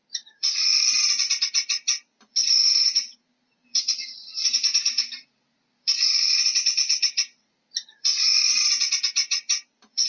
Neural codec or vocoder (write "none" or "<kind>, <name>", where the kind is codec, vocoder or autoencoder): vocoder, BigVGAN v2